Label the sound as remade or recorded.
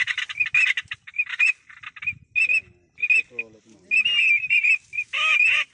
recorded